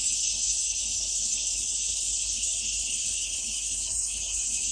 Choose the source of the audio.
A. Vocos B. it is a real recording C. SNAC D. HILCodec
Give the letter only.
D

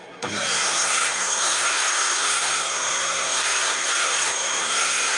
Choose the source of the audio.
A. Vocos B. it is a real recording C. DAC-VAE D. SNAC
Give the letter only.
D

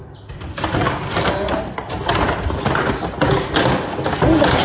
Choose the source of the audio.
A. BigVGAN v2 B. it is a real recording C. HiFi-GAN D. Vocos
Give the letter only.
B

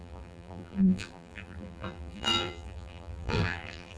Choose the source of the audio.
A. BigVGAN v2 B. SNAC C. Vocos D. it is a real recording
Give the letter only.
A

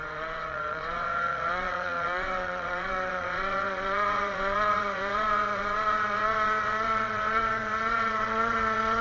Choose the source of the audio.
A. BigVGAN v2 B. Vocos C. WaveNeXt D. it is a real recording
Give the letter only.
C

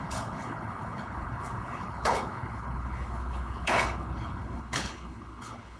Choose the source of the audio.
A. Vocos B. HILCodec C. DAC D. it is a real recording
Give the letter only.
B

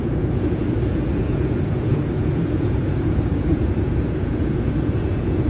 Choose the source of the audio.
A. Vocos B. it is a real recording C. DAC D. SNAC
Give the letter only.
A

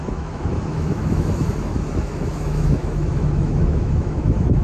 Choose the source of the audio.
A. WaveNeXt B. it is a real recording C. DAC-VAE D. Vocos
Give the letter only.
C